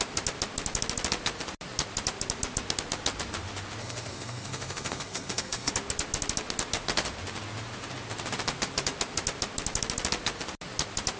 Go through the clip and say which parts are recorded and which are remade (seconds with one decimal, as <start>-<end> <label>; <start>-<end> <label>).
0.0-3.8 recorded; 3.8-5.7 remade; 5.7-11.2 recorded